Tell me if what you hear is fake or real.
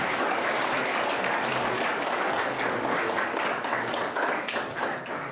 fake